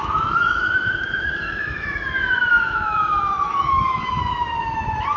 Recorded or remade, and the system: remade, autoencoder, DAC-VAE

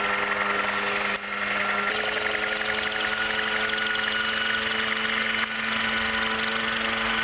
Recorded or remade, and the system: recorded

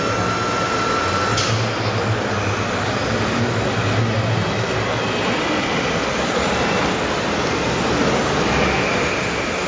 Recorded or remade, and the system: recorded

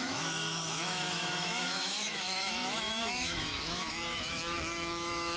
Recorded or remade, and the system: remade, autoencoder, DAC-VAE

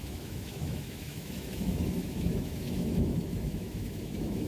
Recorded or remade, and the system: remade, autoencoder, DAC-VAE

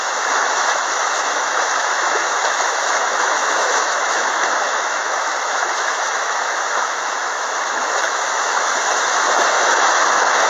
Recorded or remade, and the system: remade, autoencoder, DAC-VAE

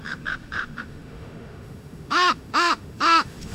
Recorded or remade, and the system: remade, autoencoder, DAC-VAE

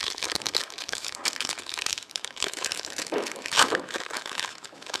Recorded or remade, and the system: remade, autoencoder, DAC-VAE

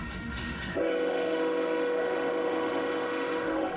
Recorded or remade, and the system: remade, autoencoder, DAC-VAE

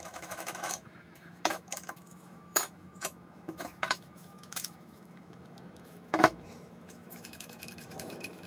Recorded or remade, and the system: remade, autoencoder, DAC-VAE